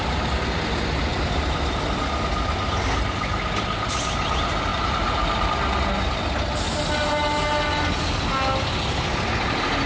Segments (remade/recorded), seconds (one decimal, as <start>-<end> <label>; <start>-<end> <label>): 0.0-4.7 recorded; 4.7-5.5 remade; 5.5-9.9 recorded